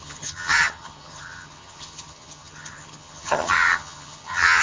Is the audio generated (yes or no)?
yes